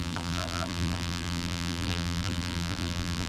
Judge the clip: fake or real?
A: fake